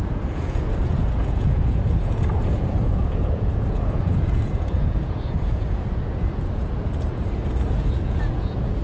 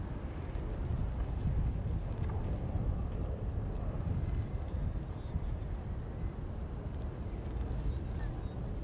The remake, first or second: first